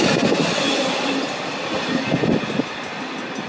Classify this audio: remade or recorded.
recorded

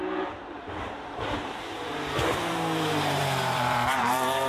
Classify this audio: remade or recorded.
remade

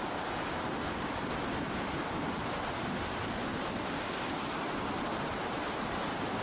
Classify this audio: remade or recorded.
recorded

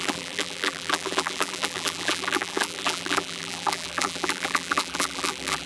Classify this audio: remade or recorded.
remade